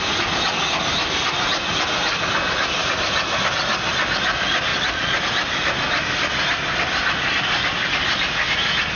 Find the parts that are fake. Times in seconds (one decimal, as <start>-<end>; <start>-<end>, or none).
4.7-5.2